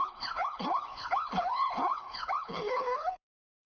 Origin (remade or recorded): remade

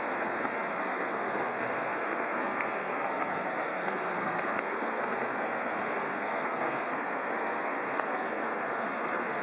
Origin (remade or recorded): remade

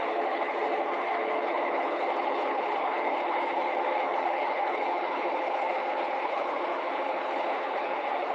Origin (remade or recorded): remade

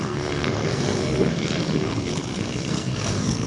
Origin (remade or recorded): remade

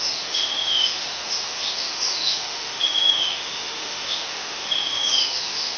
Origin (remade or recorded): remade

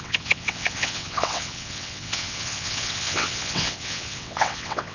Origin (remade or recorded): remade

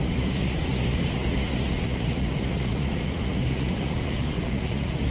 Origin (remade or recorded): remade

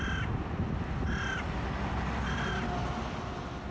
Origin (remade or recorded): recorded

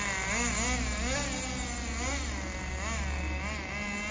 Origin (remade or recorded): recorded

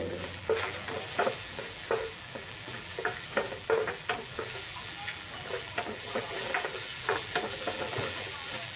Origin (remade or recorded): remade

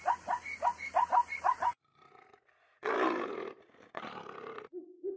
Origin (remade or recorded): recorded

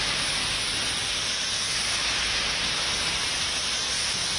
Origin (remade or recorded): recorded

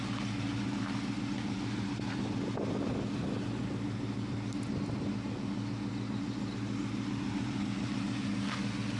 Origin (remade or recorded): recorded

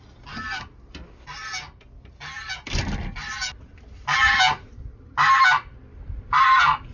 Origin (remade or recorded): recorded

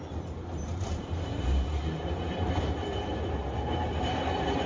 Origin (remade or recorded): remade